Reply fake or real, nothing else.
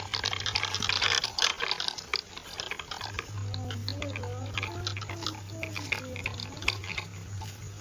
real